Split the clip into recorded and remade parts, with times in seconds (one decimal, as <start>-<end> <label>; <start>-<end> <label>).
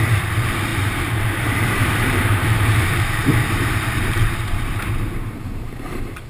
0.0-6.3 remade